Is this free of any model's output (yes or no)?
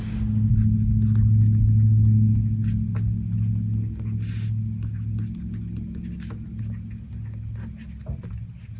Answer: yes